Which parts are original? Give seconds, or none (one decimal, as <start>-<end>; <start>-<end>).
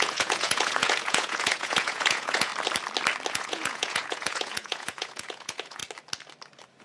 2.5-3.3; 5.8-6.8